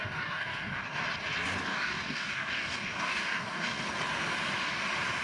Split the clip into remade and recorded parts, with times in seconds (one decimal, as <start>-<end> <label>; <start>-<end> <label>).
0.0-1.0 remade; 1.0-1.7 recorded; 1.7-3.8 remade; 3.8-5.2 recorded